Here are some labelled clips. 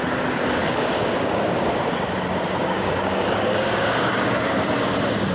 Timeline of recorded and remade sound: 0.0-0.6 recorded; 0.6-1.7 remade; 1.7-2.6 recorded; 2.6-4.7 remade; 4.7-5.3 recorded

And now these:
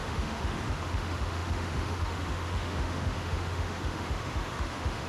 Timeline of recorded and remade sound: 0.0-5.1 remade

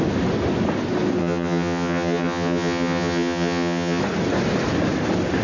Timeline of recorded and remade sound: 0.0-1.2 recorded; 1.2-4.0 remade; 4.0-5.4 recorded

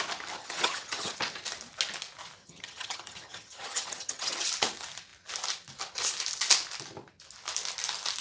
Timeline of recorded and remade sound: 0.0-0.4 recorded; 0.4-1.1 remade; 1.1-2.4 recorded; 2.4-4.5 remade; 4.5-8.2 recorded

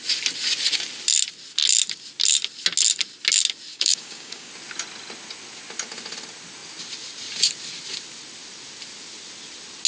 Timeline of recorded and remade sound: 0.0-3.7 recorded; 3.7-4.5 remade; 4.5-9.9 recorded

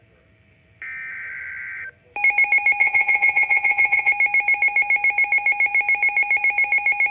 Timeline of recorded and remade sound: 0.0-2.8 recorded; 2.8-4.1 remade; 4.1-7.1 recorded

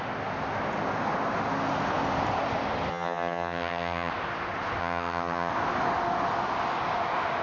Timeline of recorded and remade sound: 0.0-2.9 recorded; 2.9-4.1 remade; 4.1-4.8 recorded; 4.8-5.5 remade; 5.5-7.4 recorded

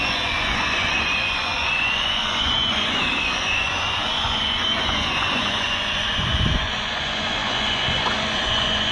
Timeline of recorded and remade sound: 0.0-8.9 remade